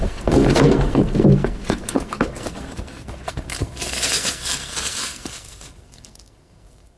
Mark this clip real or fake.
fake